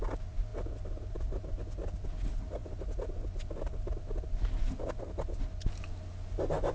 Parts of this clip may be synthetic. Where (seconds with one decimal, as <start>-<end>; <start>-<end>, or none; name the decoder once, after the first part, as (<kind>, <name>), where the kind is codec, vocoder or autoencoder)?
none